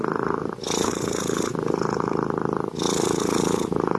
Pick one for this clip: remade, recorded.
recorded